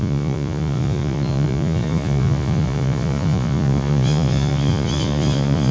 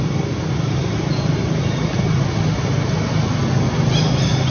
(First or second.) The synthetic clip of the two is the first